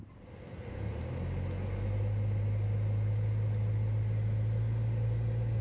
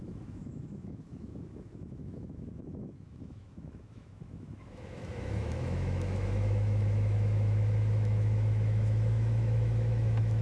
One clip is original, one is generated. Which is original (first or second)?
first